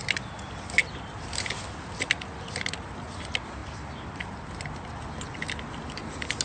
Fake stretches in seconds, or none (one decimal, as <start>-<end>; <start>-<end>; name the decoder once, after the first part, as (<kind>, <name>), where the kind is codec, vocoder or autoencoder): none